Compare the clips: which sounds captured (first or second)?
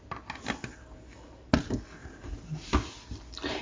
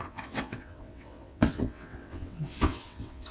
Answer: first